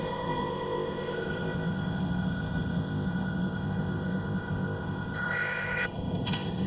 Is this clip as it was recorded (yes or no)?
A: no